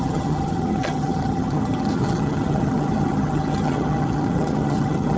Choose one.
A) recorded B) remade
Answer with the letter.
B